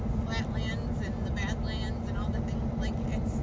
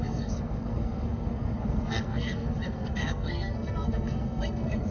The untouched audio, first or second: first